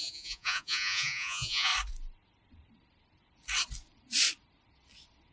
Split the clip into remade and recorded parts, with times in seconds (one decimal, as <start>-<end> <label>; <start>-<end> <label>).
0.0-1.7 remade; 1.7-5.3 recorded